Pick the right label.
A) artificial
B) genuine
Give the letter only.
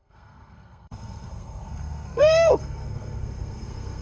A